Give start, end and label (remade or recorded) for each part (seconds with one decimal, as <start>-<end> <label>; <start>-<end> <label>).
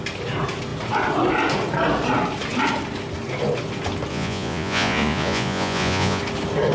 0.0-4.1 recorded; 4.1-6.2 remade; 6.2-6.7 recorded